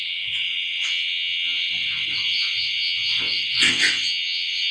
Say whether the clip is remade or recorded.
remade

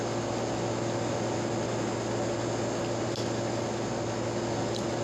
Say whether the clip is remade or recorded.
recorded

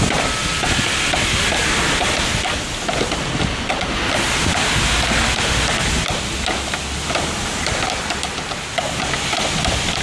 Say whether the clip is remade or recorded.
recorded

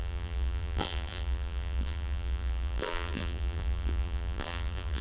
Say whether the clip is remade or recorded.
remade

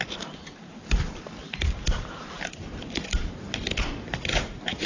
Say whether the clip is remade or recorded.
recorded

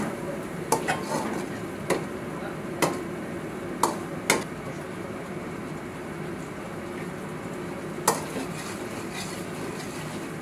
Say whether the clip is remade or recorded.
recorded